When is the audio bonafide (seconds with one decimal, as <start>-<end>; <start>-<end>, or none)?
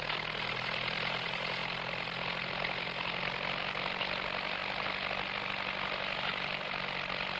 0.0-7.4